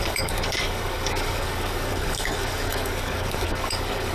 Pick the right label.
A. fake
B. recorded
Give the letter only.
A